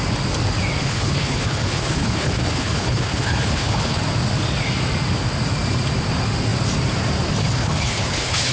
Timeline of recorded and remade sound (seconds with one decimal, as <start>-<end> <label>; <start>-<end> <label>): 0.0-0.8 recorded; 0.8-4.0 remade; 4.0-7.4 recorded; 7.4-8.5 remade